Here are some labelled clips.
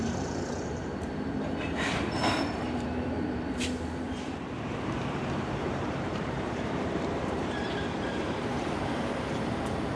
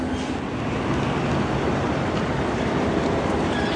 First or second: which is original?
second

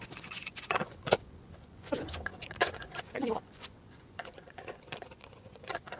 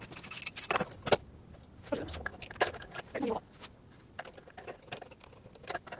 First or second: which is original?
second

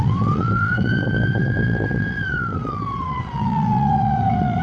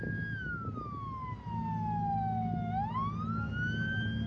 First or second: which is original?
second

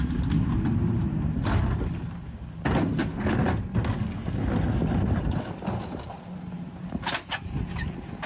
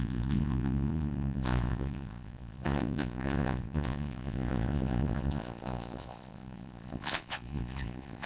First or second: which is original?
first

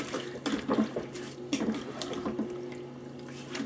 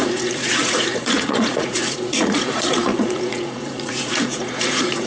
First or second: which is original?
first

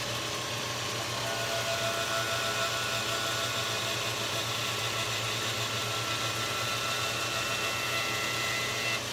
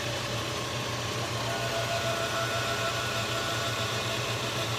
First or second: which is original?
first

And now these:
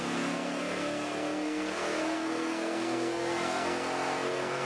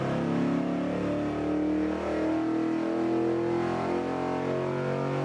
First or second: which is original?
second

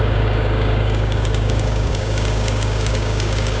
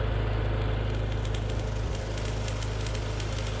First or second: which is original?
second